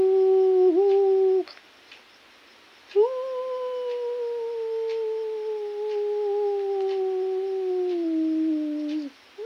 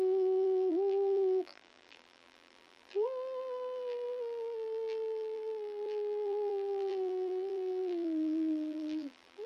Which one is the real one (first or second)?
first